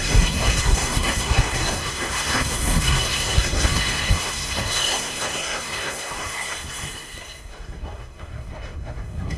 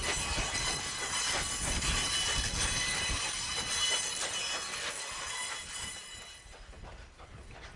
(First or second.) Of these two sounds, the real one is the second